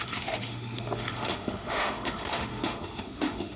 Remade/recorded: remade